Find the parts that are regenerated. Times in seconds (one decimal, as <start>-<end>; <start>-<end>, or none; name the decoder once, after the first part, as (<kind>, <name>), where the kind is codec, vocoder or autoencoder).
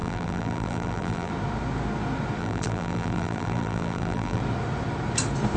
0.0-1.3 (vocoder, BigVGAN v2); 2.4-4.4